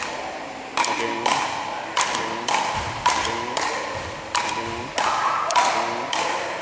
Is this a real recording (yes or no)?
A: yes